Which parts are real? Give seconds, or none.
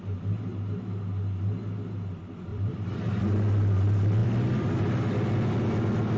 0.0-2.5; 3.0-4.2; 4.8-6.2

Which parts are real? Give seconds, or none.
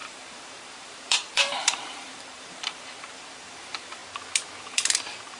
4.0-4.6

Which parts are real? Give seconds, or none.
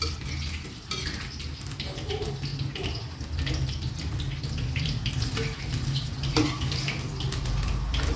0.0-8.2